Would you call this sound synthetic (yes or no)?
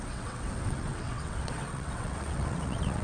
yes